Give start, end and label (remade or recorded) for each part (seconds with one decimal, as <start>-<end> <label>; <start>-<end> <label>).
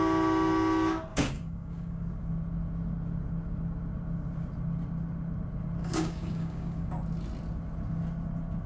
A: 0.0-1.1 recorded; 1.1-2.1 remade; 2.1-5.8 recorded; 5.8-6.9 remade; 6.9-8.7 recorded